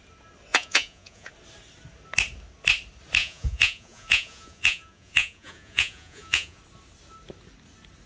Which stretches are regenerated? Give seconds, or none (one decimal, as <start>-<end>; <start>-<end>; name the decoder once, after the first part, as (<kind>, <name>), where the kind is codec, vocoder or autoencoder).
0.5-1.3 (vocoder, Vocos); 3.2-6.6